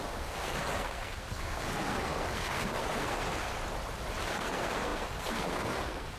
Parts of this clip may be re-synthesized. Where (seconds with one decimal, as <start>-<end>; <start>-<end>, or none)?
0.0-3.5; 4.2-6.2